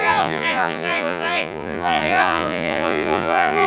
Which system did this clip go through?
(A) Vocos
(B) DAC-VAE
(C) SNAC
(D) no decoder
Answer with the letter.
A